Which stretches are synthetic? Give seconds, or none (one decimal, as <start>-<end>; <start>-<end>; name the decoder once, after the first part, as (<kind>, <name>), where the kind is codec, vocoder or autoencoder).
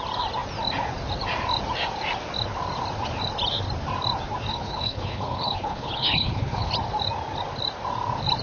4.5-6.7 (codec, HILCodec)